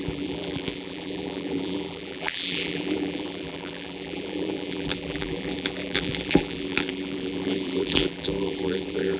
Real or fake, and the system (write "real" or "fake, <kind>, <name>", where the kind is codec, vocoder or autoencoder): fake, vocoder, BigVGAN v2